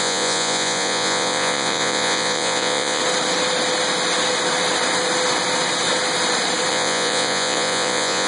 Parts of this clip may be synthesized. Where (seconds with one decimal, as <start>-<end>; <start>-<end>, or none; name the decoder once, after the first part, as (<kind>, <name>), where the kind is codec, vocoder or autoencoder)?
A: 0.0-3.0 (vocoder, Vocos); 6.7-8.3